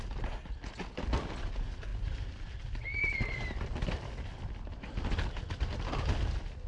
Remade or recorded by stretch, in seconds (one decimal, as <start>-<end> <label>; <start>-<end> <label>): 0.0-1.9 recorded; 1.9-2.4 remade; 2.4-6.7 recorded